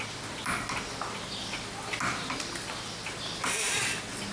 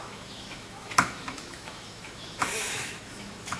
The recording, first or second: first